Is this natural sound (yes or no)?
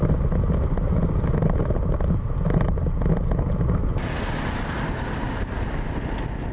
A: yes